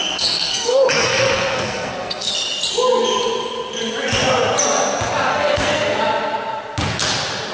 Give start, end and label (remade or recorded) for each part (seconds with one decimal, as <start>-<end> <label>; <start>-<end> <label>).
0.0-2.3 remade; 2.3-5.3 recorded; 5.3-6.0 remade; 6.0-7.5 recorded